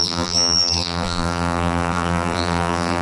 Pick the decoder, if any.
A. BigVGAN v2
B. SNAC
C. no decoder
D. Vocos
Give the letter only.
A